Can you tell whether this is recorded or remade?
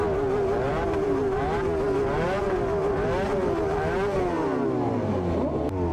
recorded